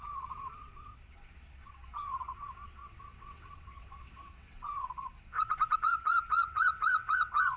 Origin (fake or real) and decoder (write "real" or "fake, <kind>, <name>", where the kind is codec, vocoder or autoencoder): fake, vocoder, WaveNeXt